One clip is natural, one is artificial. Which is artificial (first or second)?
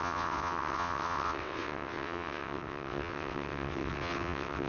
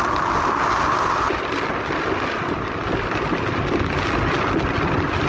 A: first